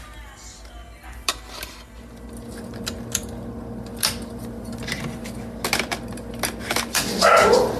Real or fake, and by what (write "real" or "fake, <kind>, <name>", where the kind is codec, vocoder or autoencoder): real